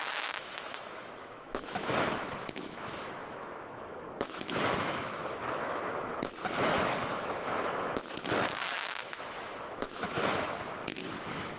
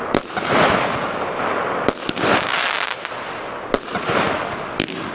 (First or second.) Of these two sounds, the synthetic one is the first